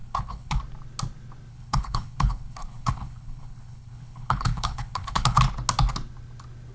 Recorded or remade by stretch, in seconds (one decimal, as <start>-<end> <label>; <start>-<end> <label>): 0.0-0.6 remade; 0.6-1.5 recorded; 1.5-5.4 remade; 5.4-6.7 recorded